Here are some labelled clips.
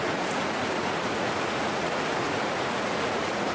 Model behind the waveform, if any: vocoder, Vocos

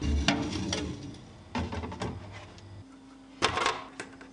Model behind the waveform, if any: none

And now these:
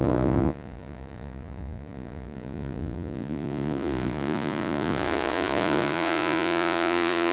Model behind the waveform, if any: vocoder, Vocos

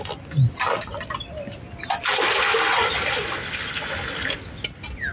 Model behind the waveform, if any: none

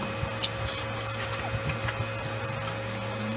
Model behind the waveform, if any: none